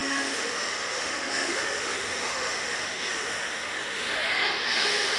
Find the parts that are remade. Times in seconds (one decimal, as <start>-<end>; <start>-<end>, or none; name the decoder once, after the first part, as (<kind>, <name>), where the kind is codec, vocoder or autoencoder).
0.0-5.2 (autoencoder, DAC-VAE)